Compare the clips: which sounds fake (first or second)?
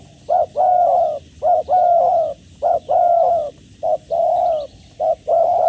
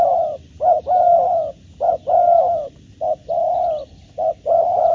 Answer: second